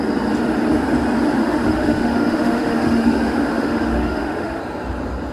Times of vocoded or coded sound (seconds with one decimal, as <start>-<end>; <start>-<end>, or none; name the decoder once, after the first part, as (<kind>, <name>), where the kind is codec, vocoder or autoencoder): 1.4-4.6 (autoencoder, DAC-VAE)